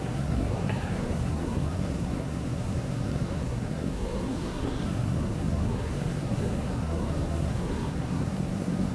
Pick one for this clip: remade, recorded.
remade